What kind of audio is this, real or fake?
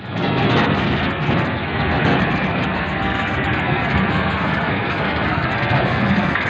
fake